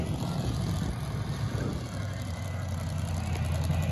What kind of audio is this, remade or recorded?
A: recorded